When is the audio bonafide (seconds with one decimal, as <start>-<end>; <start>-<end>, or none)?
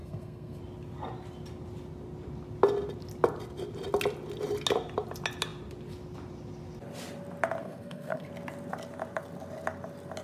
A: 0.6-7.6; 8.3-10.2